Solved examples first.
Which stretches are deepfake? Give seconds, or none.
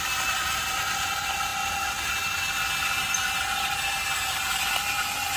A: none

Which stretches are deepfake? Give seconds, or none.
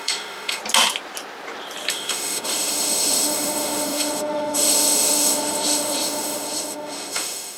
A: 0.0-0.6 (autoencoder, DAC-VAE); 1.9-7.6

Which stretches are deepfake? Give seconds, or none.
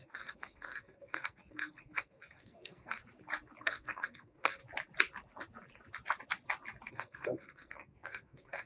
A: 0.0-3.0 (codec, SNAC); 3.6-4.6; 6.9-8.7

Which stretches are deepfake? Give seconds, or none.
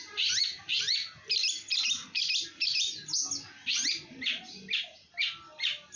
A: 0.0-1.0 (vocoder, BigVGAN v2); 3.7-4.3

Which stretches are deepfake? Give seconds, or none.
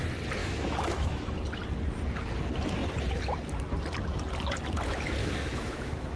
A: 0.4-1.3 (autoencoder, DAC-VAE); 5.2-6.2